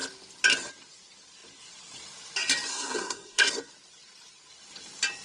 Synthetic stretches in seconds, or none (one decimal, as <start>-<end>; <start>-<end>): 2.7-3.5